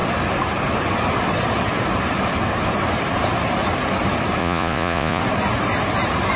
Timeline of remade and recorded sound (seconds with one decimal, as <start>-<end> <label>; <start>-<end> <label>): 0.0-4.4 recorded; 4.4-5.2 remade; 5.2-6.4 recorded